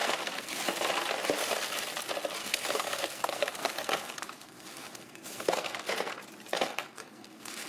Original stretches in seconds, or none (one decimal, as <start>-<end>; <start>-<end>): 0.6-2.4; 6.1-6.5